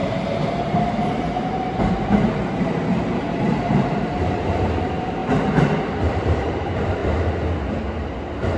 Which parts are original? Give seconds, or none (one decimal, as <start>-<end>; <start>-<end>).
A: 5.2-6.2; 7.0-8.6